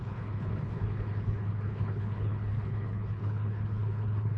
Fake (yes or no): yes